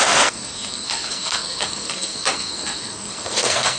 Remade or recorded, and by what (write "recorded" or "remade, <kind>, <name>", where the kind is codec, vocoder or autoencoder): remade, codec, SNAC